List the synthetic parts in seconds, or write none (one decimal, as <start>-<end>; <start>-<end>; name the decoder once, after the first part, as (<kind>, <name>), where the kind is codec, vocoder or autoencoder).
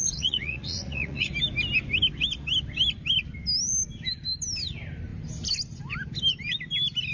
0.0-1.3 (vocoder, Vocos)